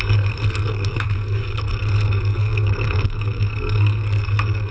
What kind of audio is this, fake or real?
fake